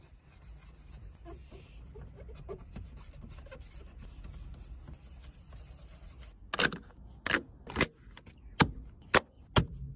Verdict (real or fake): real